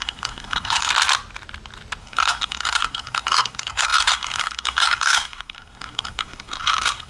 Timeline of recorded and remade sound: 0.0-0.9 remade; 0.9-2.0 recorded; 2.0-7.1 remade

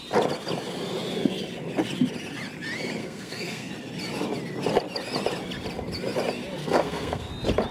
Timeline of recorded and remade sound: 0.0-3.0 recorded; 3.0-3.7 remade; 3.7-6.6 recorded; 6.6-7.3 remade; 7.3-7.7 recorded